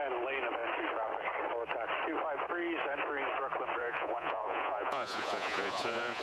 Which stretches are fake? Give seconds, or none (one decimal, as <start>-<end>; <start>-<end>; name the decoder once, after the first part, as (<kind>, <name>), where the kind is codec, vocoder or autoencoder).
3.8-6.2 (vocoder, Vocos)